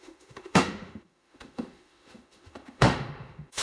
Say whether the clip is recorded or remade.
remade